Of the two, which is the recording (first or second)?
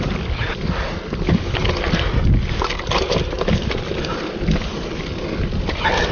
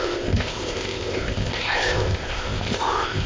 first